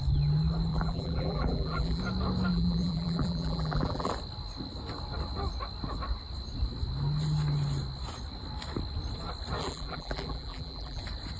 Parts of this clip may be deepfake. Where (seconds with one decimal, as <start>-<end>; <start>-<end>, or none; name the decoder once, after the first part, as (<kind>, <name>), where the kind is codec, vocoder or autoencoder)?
0.7-2.0 (vocoder, BigVGAN v2); 2.5-4.1; 9.6-11.0